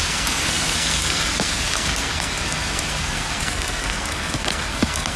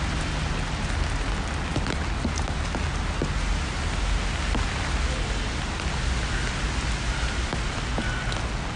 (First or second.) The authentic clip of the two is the second